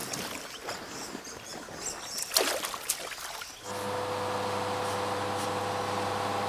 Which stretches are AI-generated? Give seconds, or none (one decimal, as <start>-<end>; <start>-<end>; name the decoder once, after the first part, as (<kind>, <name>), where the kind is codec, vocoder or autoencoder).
none